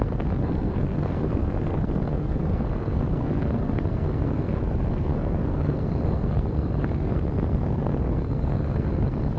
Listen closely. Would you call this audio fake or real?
fake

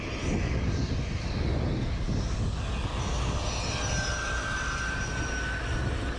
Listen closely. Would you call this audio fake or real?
real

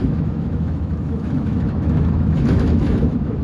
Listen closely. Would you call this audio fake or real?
fake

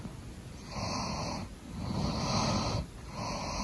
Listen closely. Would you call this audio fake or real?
real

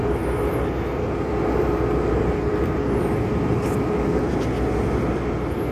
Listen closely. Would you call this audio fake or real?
real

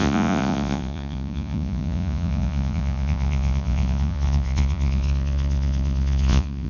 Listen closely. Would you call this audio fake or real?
fake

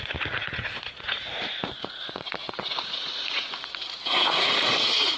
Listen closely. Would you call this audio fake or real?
fake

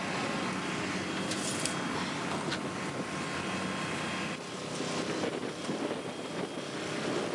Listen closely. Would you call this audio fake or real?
real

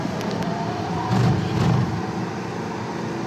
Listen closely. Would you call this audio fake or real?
real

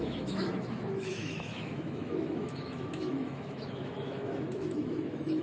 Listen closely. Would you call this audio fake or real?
fake